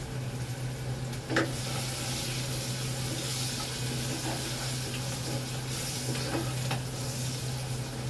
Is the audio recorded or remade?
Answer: recorded